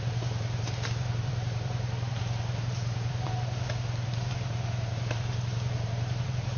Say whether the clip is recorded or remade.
remade